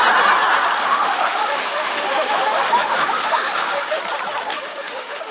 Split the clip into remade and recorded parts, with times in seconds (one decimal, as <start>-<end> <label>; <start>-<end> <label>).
0.0-0.8 recorded; 0.8-4.0 remade; 4.0-4.5 recorded; 4.5-5.3 remade